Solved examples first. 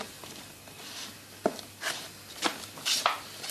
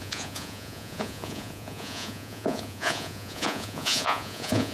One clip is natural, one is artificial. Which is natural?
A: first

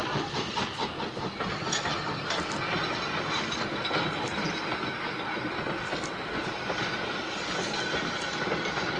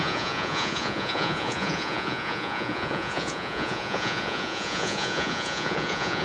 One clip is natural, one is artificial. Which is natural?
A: first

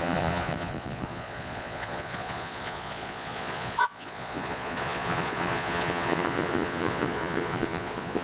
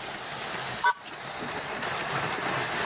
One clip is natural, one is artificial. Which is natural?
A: second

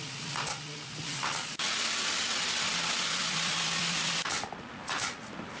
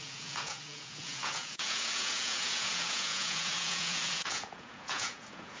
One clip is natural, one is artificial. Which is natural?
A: first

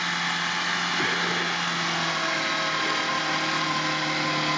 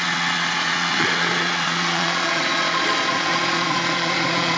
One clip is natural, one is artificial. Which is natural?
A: first